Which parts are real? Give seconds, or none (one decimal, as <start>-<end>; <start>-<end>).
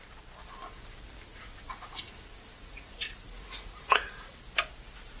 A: 0.0-1.3; 4.4-5.2